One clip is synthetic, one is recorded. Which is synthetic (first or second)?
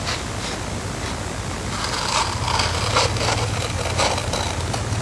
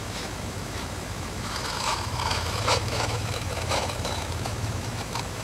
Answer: second